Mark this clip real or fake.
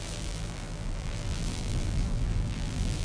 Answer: fake